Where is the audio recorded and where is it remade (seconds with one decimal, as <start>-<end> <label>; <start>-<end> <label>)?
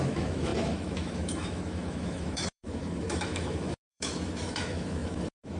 0.0-5.6 remade